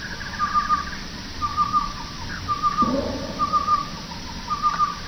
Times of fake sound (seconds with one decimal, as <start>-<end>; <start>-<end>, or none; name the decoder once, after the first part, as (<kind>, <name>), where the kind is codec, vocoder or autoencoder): 0.0-3.7 (vocoder, BigVGAN v2); 4.5-5.1